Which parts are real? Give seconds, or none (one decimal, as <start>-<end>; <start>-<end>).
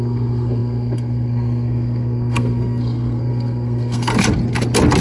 4.1-5.0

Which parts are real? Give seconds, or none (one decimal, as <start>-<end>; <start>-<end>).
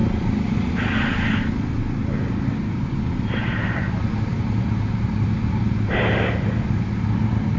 0.0-7.6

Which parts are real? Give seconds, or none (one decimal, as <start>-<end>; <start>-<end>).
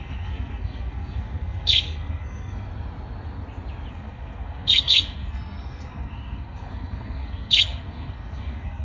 2.7-3.9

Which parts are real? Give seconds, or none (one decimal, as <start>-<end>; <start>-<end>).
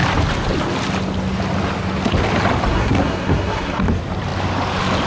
0.0-2.7; 3.8-5.1